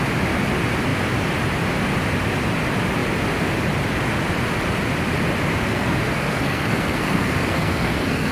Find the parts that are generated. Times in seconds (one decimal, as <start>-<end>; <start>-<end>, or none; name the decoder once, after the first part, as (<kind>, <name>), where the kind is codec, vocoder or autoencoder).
5.7-8.3 (codec, SNAC)